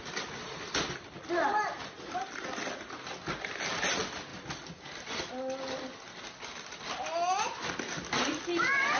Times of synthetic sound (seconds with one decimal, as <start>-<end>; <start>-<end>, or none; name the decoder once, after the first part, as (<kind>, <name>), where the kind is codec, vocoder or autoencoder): none